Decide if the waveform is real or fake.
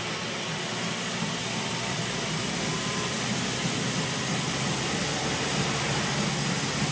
real